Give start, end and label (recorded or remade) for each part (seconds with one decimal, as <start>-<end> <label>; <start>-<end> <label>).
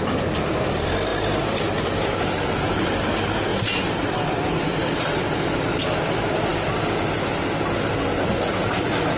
0.0-9.2 recorded